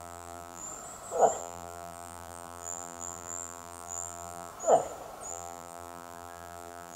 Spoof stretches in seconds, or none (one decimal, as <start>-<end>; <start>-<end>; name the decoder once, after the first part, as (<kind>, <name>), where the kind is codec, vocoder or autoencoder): 0.0-0.6 (vocoder, BigVGAN v2); 1.4-4.5; 5.3-7.0

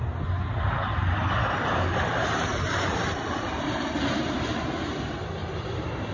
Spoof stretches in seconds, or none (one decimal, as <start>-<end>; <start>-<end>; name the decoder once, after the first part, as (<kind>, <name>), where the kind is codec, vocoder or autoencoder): 2.1-4.9 (vocoder, BigVGAN v2); 5.4-6.1

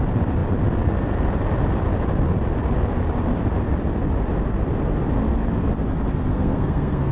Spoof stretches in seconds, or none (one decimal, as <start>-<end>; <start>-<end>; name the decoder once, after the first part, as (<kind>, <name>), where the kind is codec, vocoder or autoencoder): 6.3-7.1 (codec, SNAC)

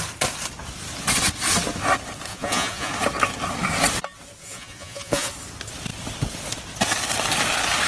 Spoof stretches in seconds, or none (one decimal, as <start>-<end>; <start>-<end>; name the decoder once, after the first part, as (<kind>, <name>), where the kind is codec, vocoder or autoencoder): 2.3-2.9 (vocoder, Vocos); 4.4-5.3